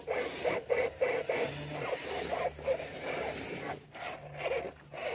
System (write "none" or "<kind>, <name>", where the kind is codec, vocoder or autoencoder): none